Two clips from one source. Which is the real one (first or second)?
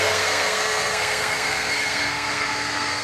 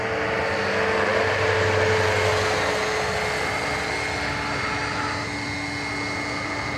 second